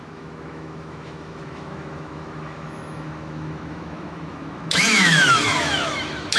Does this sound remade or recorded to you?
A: remade